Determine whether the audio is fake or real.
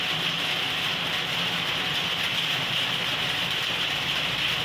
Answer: real